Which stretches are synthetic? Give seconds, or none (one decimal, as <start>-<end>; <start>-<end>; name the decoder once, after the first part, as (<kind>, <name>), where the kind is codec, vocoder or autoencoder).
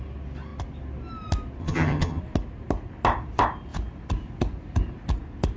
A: 1.6-2.2 (vocoder, HiFi-GAN)